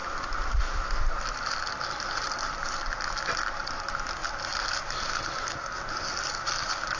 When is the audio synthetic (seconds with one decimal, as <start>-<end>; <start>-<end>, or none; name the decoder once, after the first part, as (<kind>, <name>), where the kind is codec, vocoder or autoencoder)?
none

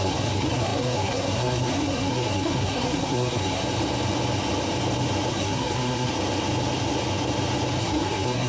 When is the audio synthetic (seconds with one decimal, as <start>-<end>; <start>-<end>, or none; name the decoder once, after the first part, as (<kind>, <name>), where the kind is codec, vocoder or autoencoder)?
0.0-3.6 (codec, SNAC); 5.3-6.1; 7.8-8.5

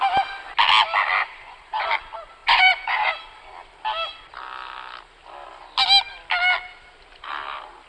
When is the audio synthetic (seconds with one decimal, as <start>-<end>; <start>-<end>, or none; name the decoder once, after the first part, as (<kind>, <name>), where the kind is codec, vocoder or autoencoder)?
1.2-1.9 (vocoder, Vocos); 2.4-3.1